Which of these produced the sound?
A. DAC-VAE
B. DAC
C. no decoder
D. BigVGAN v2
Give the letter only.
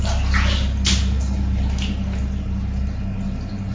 C